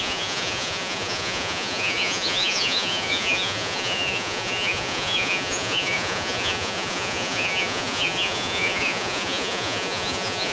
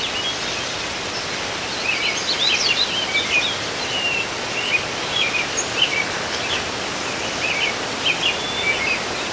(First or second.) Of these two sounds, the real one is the second